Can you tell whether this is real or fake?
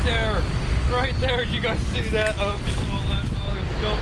real